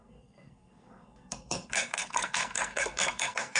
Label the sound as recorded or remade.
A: remade